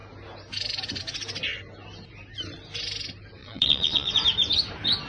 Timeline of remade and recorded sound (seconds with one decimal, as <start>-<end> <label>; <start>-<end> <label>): 0.0-3.4 recorded; 3.4-4.1 remade; 4.1-5.1 recorded